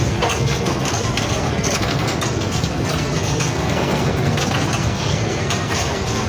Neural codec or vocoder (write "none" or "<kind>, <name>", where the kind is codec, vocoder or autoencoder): codec, SNAC